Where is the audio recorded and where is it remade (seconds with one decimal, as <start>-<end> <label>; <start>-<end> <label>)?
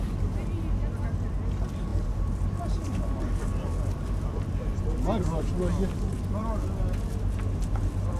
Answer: 0.0-8.2 recorded